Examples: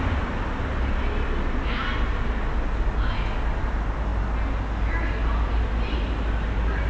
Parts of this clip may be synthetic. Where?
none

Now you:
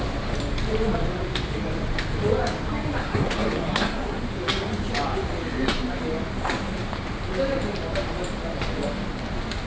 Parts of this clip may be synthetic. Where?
3.0-4.2 (codec, SNAC)

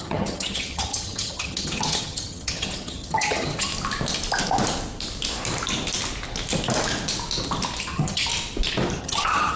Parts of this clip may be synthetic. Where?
0.0-3.7 (vocoder, HiFi-GAN); 7.8-8.3; 9.0-9.6

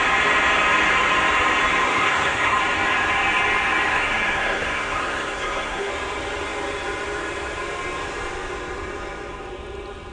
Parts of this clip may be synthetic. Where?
1.9-2.6 (codec, SNAC); 3.9-5.9

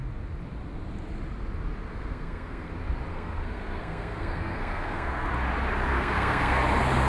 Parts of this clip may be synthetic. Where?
1.9-2.7 (codec, SNAC); 3.1-5.3; 5.9-6.6

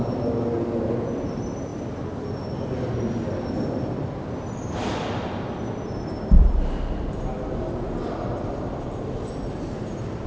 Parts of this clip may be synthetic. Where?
none

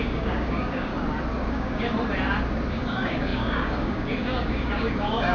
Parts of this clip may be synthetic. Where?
0.0-0.9 (codec, DAC); 1.5-1.9; 2.7-5.3